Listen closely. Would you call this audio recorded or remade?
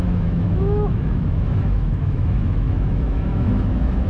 remade